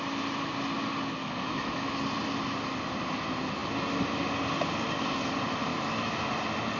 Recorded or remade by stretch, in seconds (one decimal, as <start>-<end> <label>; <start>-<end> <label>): 0.0-1.2 recorded; 1.2-2.0 remade; 2.0-5.7 recorded; 5.7-6.2 remade; 6.2-6.8 recorded